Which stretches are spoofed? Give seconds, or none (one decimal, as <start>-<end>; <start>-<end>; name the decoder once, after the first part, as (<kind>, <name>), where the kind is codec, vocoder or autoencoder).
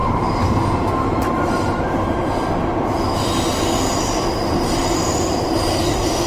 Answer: 0.0-1.9 (vocoder, BigVGAN v2); 4.8-5.5